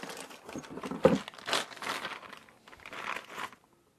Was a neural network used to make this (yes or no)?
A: no